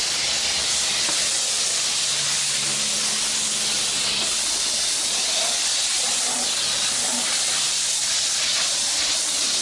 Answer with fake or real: real